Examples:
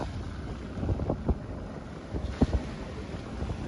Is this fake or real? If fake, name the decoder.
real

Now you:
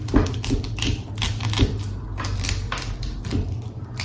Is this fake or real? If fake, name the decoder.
real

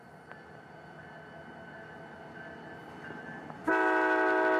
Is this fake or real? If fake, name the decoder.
real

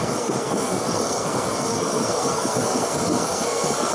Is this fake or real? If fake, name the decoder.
fake, codec, SNAC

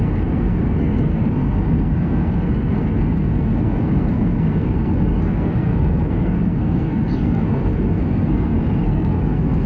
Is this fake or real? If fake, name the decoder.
fake, codec, SNAC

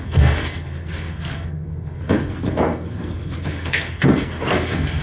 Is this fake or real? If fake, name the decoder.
fake, codec, SNAC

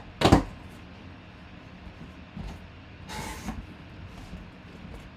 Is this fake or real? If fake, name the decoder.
real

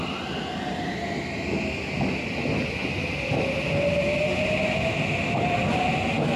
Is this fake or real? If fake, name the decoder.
real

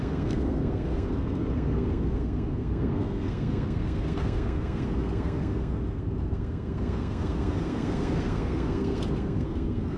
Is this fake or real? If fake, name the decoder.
fake, codec, SNAC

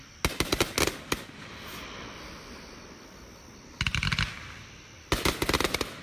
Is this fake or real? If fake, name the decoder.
real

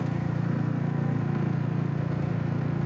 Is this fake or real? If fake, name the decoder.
fake, codec, SNAC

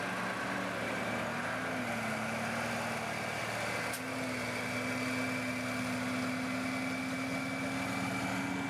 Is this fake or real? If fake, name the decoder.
real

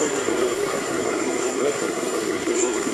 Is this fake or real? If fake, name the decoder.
fake, codec, SNAC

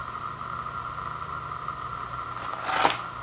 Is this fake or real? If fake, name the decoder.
real